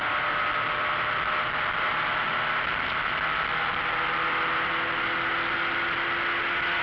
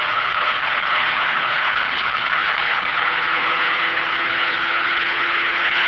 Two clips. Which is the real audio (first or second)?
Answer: first